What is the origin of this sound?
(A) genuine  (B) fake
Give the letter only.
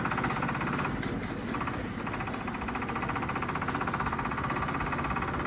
A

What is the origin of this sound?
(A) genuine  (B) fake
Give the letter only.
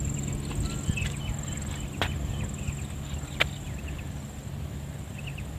A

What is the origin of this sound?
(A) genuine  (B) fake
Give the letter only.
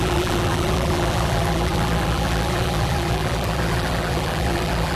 B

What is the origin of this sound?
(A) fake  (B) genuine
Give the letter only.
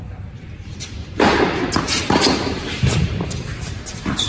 A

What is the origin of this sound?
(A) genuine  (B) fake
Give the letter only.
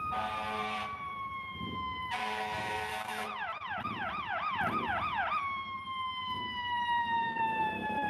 B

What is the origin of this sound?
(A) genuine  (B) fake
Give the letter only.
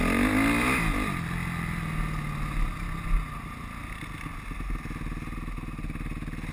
A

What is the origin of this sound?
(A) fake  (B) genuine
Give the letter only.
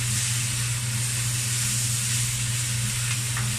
B